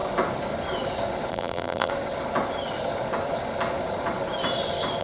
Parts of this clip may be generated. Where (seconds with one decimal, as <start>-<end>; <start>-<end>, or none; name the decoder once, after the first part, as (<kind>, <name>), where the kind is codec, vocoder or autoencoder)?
1.3-1.9 (vocoder, BigVGAN v2)